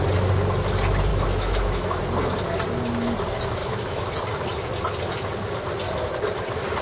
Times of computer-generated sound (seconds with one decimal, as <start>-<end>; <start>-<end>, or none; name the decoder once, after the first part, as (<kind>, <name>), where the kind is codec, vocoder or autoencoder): 1.1-2.0 (autoencoder, DAC-VAE); 3.6-4.1